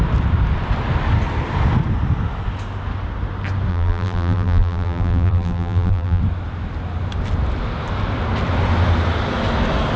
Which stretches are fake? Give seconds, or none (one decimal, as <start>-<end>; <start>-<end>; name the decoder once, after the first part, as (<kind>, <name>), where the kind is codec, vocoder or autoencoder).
3.7-6.2 (vocoder, BigVGAN v2)